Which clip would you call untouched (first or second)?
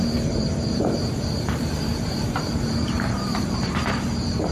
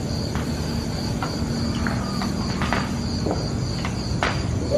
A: second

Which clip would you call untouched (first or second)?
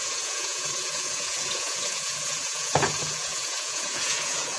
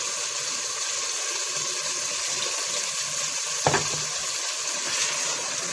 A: second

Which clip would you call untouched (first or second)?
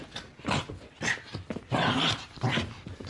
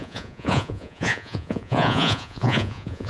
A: first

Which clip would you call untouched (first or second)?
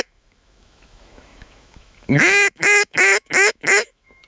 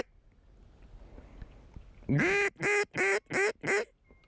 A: second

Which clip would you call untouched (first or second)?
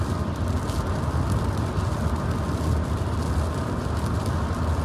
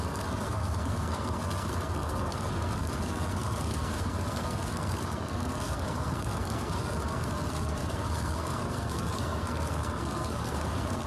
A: first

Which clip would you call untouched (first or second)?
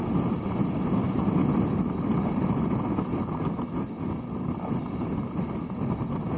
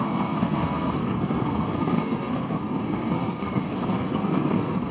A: first